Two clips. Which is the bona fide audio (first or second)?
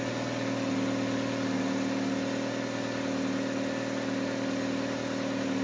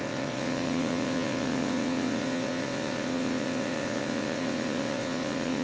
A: first